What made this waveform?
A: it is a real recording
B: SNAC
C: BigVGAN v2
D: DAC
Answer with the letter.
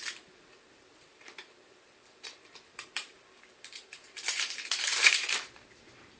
C